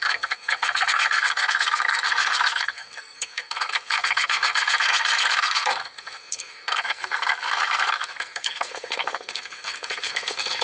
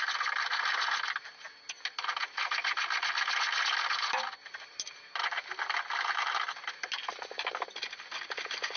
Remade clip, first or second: first